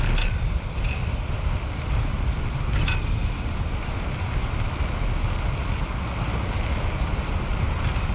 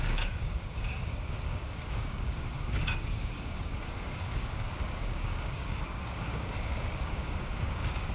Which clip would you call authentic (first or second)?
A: first